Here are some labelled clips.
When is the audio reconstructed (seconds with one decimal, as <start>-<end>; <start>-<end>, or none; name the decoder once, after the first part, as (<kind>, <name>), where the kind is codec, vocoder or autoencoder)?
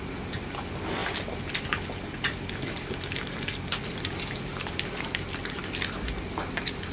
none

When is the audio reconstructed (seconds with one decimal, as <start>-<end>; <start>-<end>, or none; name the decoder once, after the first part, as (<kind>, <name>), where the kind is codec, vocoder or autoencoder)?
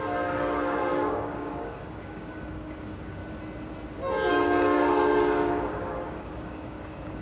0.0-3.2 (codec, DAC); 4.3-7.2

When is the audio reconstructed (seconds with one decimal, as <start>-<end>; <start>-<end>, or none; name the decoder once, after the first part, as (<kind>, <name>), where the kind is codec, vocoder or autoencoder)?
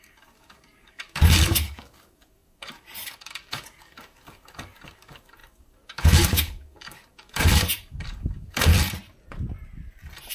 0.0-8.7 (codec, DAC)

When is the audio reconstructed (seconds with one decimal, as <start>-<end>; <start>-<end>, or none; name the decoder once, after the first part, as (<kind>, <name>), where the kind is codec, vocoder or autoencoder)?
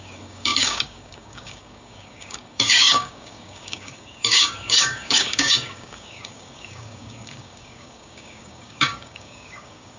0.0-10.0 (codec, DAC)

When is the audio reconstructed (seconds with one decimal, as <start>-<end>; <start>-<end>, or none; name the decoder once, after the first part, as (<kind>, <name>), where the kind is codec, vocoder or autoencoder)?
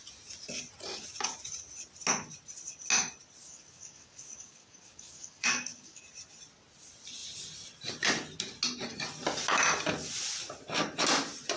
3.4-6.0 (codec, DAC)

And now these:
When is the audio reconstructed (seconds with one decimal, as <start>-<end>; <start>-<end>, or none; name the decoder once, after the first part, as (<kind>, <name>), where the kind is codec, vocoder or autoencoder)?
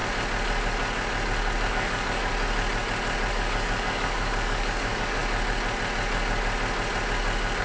1.7-2.3 (codec, DAC); 3.3-5.2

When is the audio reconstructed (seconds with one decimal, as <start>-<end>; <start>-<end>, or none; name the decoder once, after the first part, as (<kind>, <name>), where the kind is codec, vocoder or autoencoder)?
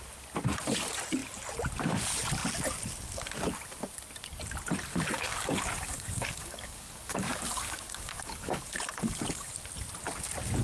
4.9-9.5 (codec, DAC)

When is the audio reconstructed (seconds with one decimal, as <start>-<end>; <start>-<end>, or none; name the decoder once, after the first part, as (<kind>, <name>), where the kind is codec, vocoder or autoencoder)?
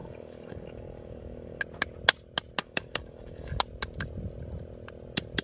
0.0-1.6 (codec, DAC); 2.6-3.6